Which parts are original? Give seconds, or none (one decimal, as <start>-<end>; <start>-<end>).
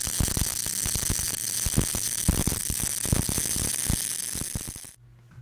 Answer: 0.0-5.4